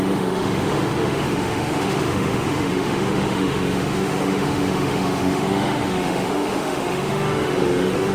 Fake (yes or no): yes